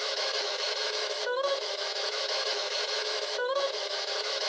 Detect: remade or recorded remade